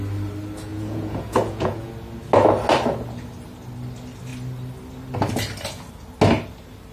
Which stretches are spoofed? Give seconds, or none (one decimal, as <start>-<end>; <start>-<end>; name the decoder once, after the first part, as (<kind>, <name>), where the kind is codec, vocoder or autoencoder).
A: 0.7-1.9 (vocoder, Vocos)